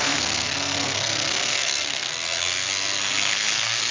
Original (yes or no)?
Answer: no